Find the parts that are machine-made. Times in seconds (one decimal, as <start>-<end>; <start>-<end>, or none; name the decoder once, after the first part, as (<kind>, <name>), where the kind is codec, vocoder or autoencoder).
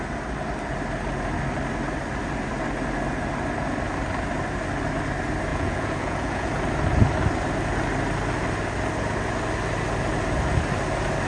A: 5.5-6.5 (vocoder, Vocos)